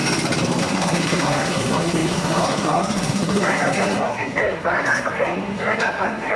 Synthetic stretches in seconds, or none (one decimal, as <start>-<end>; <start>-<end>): 0.6-6.4